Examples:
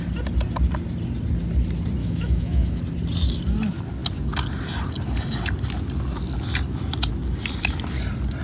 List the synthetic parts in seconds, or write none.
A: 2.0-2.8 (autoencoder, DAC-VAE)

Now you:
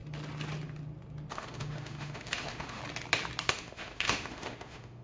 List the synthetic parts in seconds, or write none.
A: 1.3-2.8 (autoencoder, DAC-VAE); 3.5-5.0

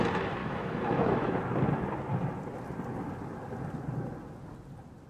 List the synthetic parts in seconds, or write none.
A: 0.4-1.4 (autoencoder, DAC-VAE)

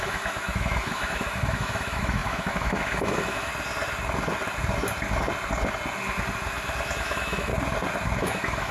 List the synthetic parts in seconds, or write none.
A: 0.0-3.5 (autoencoder, DAC-VAE); 7.0-7.5; 8.2-8.7

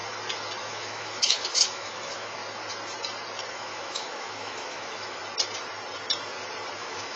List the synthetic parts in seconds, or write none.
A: 0.6-2.4 (autoencoder, DAC-VAE); 3.5-5.2; 6.8-7.2

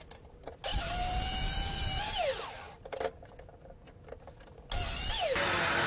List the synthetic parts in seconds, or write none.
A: none

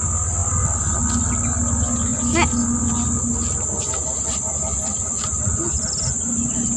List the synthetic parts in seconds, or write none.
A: none

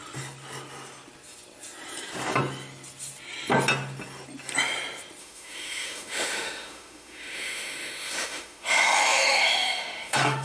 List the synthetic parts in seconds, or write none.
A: 5.2-10.4 (autoencoder, DAC-VAE)